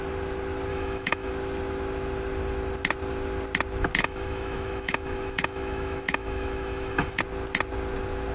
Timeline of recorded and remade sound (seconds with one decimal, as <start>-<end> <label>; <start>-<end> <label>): 0.0-0.7 recorded; 0.7-1.3 remade; 1.3-4.0 recorded; 4.0-7.2 remade; 7.2-8.3 recorded